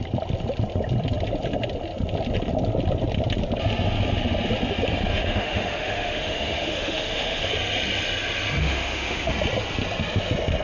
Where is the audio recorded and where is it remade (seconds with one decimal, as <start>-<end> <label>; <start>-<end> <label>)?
0.0-5.1 recorded; 5.1-7.5 remade; 7.5-8.6 recorded; 8.6-9.3 remade; 9.3-10.6 recorded